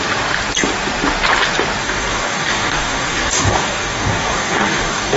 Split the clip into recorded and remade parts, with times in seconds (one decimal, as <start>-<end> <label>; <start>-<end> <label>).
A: 0.0-1.8 recorded; 1.8-5.2 remade